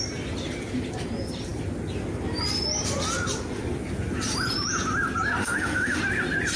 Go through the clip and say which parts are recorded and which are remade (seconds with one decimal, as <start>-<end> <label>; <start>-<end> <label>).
0.0-5.4 recorded; 5.4-6.0 remade; 6.0-6.6 recorded